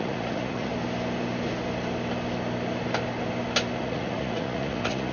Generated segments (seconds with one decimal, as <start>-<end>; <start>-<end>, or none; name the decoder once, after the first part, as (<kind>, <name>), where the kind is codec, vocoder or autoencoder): 0.0-0.7 (vocoder, Vocos); 3.8-5.1

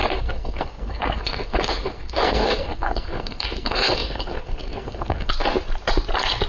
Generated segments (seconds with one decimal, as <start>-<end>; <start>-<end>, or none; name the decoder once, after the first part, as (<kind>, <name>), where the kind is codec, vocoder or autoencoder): 0.0-5.3 (codec, SNAC)

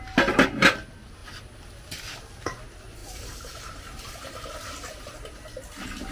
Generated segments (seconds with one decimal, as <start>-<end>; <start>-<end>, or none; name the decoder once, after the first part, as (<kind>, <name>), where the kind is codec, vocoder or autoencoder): 3.0-5.3 (vocoder, BigVGAN v2)

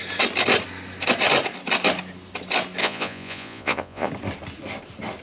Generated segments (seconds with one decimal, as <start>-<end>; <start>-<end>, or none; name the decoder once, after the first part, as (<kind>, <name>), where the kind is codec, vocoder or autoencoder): 2.8-4.1 (vocoder, Vocos)